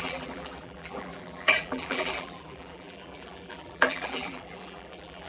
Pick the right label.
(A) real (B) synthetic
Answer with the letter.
B